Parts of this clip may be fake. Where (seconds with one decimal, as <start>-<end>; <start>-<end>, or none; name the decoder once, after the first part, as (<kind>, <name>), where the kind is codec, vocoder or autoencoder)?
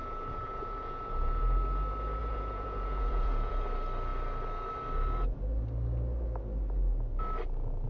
0.0-1.4 (vocoder, Vocos); 2.2-3.5